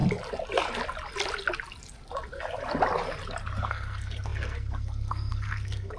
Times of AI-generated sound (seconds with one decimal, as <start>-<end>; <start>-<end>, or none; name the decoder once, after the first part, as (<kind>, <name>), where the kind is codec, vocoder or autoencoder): 3.6-6.0 (codec, SNAC)